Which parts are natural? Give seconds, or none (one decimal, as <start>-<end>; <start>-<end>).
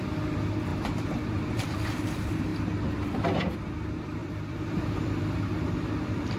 2.5-3.7